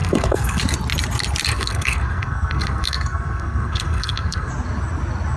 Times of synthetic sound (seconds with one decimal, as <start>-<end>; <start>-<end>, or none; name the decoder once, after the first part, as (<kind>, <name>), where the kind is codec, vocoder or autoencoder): 0.0-0.6 (codec, SNAC); 1.5-4.5